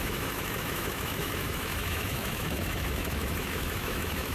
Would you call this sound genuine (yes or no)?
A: no